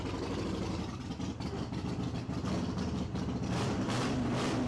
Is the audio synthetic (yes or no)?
yes